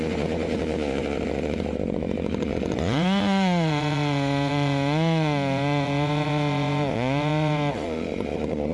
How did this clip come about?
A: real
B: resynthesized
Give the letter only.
B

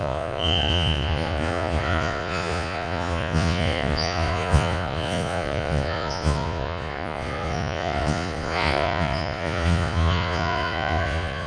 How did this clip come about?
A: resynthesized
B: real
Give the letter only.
A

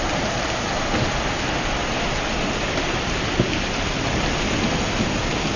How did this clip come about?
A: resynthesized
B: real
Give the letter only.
B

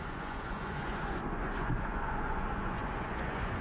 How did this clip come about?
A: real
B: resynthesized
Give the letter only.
B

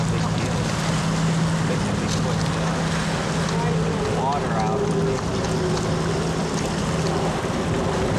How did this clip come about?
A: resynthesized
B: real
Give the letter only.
B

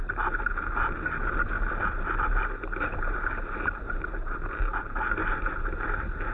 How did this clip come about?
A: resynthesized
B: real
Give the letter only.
B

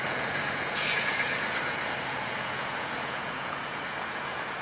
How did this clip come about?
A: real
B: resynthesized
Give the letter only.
B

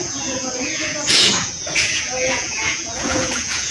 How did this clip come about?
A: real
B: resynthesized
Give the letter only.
B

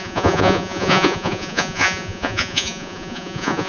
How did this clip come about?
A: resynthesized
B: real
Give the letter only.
A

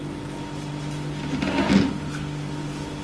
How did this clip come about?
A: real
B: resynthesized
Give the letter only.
A